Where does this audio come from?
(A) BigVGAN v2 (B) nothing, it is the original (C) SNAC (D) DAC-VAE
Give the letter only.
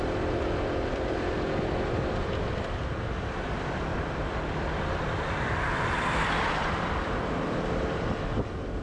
A